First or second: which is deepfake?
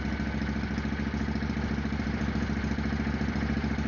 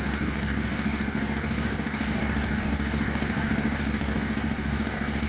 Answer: second